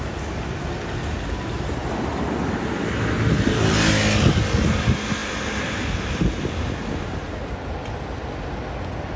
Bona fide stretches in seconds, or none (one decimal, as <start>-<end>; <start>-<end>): 0.0-9.2